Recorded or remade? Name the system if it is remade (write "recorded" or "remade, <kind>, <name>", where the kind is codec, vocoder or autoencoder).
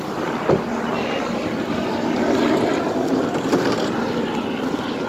recorded